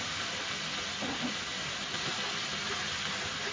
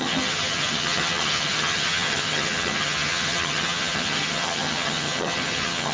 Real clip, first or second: first